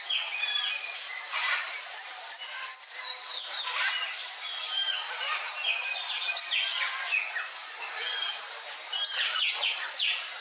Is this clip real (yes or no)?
yes